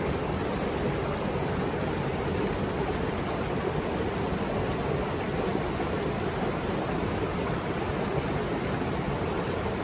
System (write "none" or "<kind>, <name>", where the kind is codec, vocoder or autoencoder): none